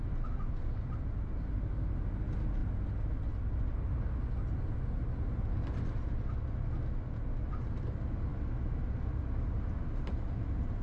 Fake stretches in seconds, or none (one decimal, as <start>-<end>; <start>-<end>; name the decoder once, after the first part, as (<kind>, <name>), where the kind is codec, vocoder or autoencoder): none